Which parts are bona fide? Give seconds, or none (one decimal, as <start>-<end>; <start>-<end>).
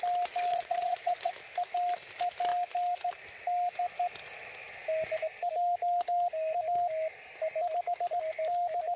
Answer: 0.0-0.5; 1.3-9.0